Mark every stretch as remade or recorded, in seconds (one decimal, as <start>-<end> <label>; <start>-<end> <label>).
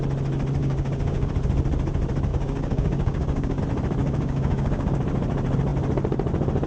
0.0-0.6 recorded; 0.6-1.3 remade; 1.3-2.3 recorded; 2.3-3.6 remade; 3.6-4.0 recorded; 4.0-5.0 remade; 5.0-6.7 recorded